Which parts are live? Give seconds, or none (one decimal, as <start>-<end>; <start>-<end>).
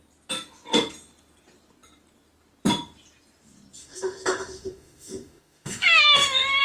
0.0-3.8